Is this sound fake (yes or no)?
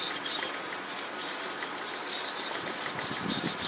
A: no